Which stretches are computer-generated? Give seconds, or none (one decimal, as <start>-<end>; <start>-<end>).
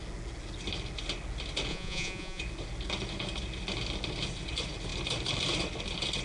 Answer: 1.7-2.4